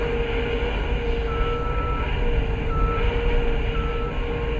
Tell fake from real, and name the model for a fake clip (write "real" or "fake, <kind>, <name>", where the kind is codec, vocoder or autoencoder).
real